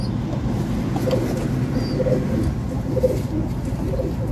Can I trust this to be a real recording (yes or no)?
yes